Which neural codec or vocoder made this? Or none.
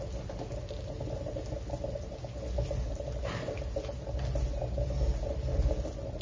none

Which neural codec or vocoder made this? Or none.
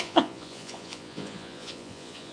vocoder, Vocos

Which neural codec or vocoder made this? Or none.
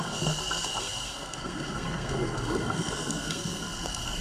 codec, SNAC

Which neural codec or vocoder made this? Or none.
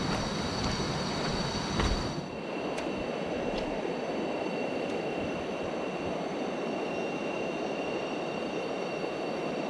none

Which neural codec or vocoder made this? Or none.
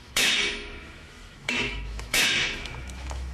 autoencoder, DAC-VAE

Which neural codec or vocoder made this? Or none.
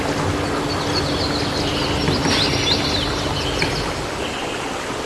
none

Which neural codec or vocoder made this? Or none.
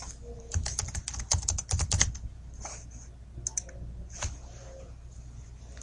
none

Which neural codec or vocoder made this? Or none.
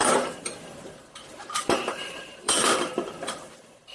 vocoder, BigVGAN v2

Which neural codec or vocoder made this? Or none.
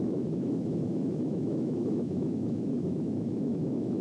autoencoder, DAC-VAE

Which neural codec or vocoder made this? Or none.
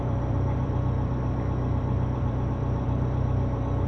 vocoder, BigVGAN v2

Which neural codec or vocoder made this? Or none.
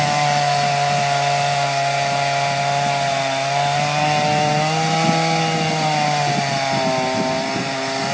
none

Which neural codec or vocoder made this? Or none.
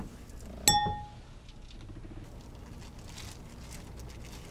none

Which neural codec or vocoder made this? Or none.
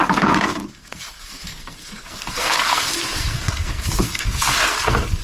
codec, SNAC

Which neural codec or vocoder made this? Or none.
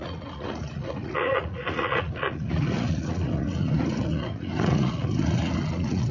vocoder, Vocos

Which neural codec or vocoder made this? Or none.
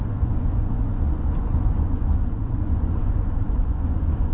vocoder, Vocos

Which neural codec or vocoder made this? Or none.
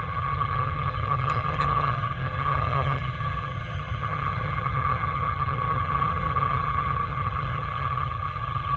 vocoder, HiFi-GAN